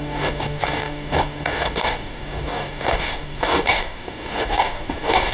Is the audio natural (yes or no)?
no